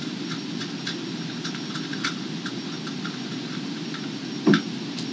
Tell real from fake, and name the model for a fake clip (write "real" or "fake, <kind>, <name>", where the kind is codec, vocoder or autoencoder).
real